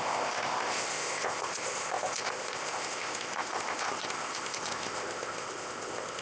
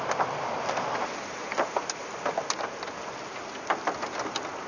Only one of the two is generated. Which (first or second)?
first